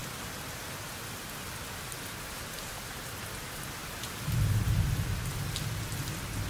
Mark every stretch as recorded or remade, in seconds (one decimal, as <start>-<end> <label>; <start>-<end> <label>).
0.0-6.5 recorded